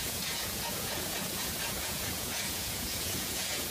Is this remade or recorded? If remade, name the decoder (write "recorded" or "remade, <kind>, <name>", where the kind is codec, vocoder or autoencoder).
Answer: remade, vocoder, Vocos